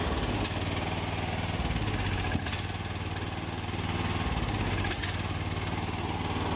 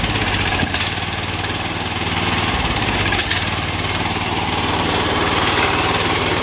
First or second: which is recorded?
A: first